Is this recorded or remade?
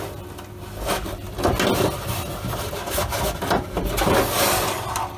recorded